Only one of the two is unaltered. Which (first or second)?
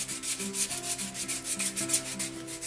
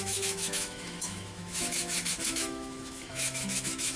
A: first